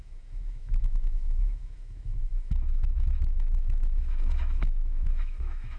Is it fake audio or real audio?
fake